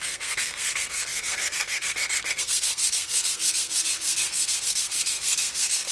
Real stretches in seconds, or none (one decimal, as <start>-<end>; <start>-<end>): none